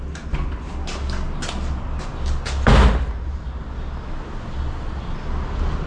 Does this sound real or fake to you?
real